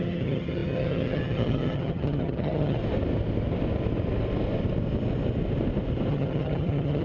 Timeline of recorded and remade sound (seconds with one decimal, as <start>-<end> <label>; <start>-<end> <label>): 0.0-2.8 remade; 2.8-6.1 recorded; 6.1-7.0 remade